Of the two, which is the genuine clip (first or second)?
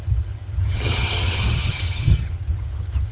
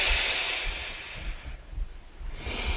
second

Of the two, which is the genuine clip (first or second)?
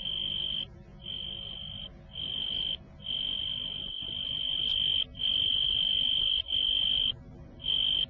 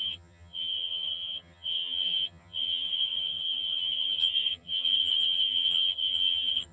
first